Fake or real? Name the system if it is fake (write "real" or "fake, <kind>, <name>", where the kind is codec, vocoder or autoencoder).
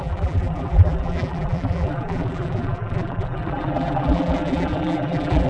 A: fake, vocoder, BigVGAN v2